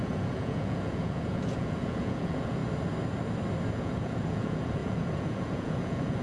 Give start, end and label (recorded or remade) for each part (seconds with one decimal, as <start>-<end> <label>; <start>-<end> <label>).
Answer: 0.0-2.6 remade; 2.6-3.8 recorded; 3.8-6.2 remade

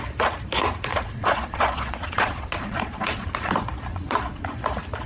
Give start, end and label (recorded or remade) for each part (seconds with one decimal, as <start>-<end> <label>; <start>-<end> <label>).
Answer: 0.0-0.9 recorded; 0.9-3.4 remade; 3.4-3.9 recorded; 3.9-4.5 remade; 4.5-5.1 recorded

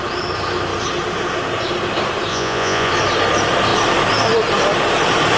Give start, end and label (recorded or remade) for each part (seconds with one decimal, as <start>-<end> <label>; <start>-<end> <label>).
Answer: 0.0-2.3 recorded; 2.3-2.9 remade; 2.9-5.4 recorded